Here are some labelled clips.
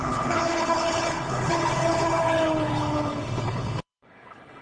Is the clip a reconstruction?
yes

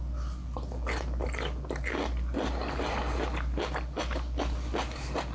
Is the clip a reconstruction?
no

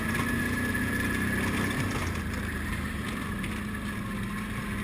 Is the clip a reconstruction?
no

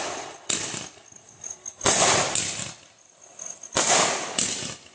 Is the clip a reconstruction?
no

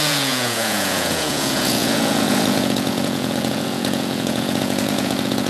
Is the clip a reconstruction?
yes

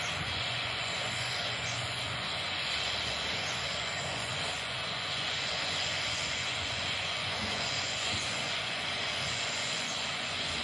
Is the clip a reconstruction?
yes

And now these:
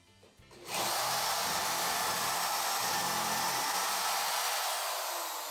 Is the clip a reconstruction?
no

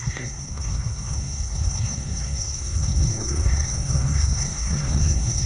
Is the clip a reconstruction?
yes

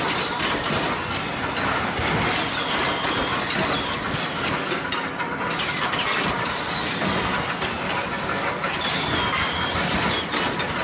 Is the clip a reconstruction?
no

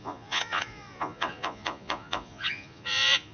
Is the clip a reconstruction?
yes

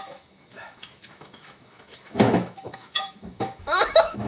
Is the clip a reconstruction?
yes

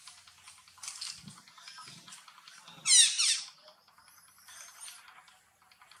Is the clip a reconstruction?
no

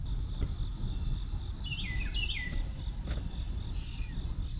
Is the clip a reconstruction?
no